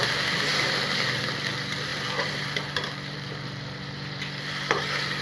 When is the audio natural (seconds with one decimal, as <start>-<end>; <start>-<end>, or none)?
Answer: none